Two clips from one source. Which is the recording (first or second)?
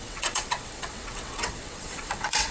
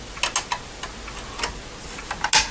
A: second